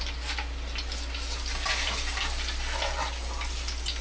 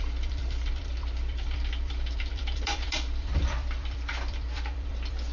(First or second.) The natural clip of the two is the first